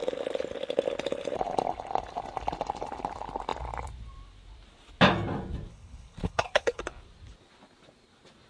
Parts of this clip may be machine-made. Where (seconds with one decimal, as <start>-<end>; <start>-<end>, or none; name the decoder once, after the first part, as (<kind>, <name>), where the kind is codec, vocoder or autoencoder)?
5.7-6.8 (codec, HILCodec)